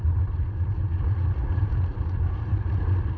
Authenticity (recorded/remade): remade